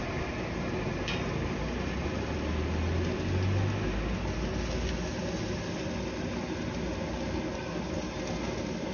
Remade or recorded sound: recorded